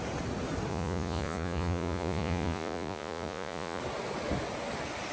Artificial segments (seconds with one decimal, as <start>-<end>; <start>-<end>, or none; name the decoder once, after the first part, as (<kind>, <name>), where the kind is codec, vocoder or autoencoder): 0.7-3.8 (vocoder, Vocos)